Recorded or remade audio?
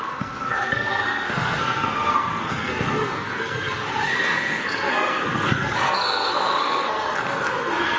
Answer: remade